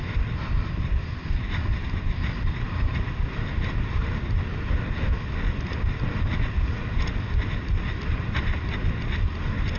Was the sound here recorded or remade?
recorded